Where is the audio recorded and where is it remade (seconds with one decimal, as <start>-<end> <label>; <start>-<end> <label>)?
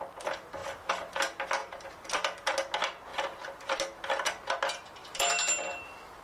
0.0-0.6 recorded; 0.6-1.2 remade; 1.2-1.6 recorded; 1.6-2.5 remade; 2.5-3.1 recorded; 3.1-3.6 remade; 3.6-5.0 recorded; 5.0-6.2 remade